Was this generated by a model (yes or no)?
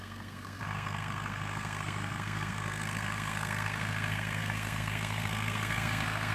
yes